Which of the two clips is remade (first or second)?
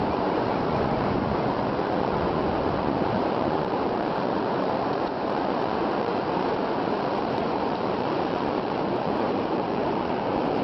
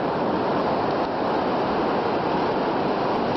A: first